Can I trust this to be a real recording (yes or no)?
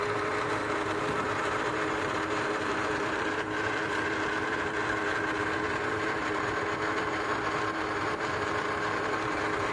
no